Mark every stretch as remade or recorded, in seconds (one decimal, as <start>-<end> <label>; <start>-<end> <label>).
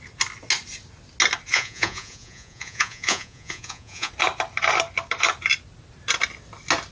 0.0-1.5 recorded; 1.5-4.1 remade; 4.1-6.9 recorded